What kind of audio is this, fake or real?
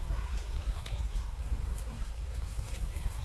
fake